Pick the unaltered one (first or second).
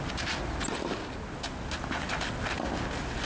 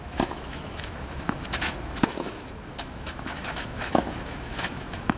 first